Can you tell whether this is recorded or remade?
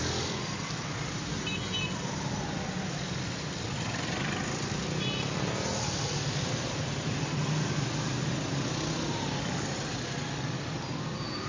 recorded